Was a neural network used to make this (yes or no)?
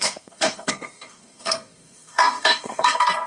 yes